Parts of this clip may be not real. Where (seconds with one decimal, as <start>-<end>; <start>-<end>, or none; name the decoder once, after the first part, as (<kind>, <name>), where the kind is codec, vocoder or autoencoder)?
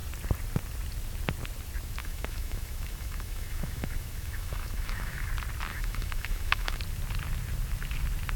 2.0-5.3 (autoencoder, DAC-VAE); 5.7-6.8